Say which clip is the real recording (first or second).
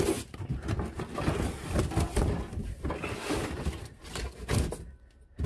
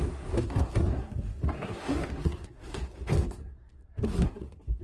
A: first